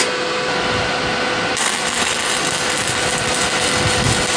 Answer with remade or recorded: recorded